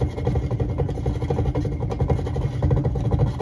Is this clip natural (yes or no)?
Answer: yes